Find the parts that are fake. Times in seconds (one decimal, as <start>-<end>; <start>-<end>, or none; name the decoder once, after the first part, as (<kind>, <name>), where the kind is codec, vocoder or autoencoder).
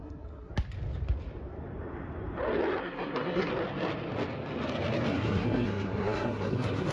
0.0-0.5 (codec, SNAC); 2.8-3.5; 5.1-6.9